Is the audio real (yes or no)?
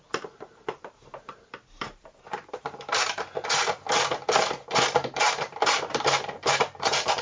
no